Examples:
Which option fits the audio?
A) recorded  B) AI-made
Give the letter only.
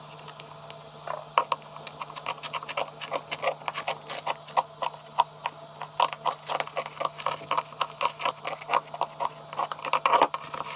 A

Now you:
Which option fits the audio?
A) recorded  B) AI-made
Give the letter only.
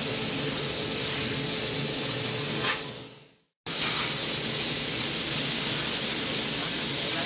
A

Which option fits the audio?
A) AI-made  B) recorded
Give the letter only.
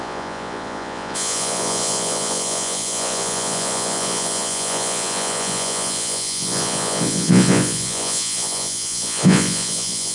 A